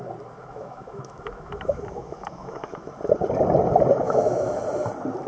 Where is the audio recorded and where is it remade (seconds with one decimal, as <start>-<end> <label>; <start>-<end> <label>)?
0.0-0.4 recorded; 0.4-2.9 remade; 2.9-3.9 recorded; 3.9-4.6 remade; 4.6-5.3 recorded